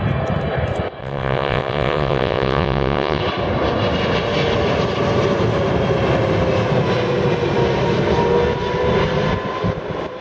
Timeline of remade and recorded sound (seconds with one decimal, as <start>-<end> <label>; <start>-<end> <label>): 0.0-1.0 recorded; 1.0-3.2 remade; 3.2-10.2 recorded